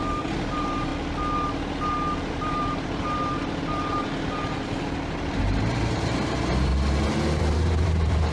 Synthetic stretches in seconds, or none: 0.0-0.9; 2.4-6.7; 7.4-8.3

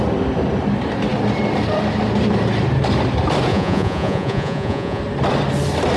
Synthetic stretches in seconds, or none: 3.5-5.0

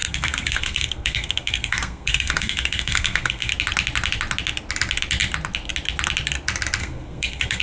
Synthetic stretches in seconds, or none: 0.0-3.5; 6.8-7.6

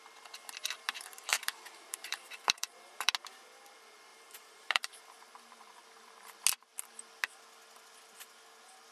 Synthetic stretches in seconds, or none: 0.8-3.1; 4.1-5.0